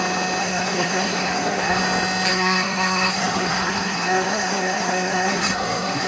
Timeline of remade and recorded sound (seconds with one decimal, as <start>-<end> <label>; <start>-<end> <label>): 0.0-0.4 recorded; 0.4-1.8 remade; 1.8-2.3 recorded; 2.3-6.1 remade